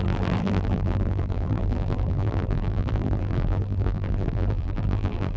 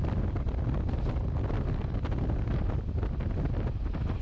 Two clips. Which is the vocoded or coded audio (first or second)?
first